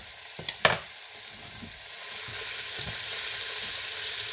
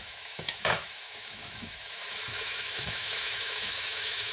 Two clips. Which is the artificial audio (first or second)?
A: second